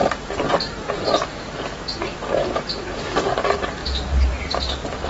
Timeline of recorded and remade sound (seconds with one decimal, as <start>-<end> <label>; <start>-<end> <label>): 0.0-5.1 recorded